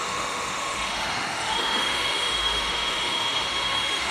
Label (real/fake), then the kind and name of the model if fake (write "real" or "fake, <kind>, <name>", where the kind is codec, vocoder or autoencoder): fake, autoencoder, DAC-VAE